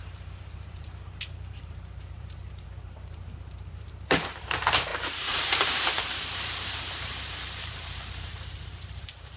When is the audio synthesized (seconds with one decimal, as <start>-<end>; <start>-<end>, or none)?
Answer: 0.0-9.4